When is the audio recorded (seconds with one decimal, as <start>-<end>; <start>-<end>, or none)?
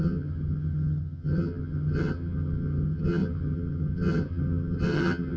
none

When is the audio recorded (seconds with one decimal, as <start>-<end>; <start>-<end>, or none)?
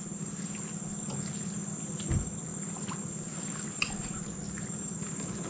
0.0-5.5